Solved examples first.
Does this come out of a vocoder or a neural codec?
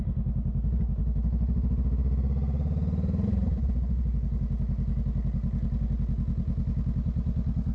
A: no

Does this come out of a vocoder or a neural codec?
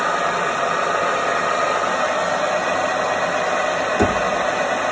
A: no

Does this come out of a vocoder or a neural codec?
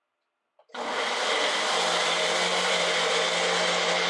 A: no